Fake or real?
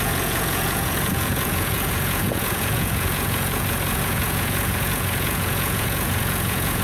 fake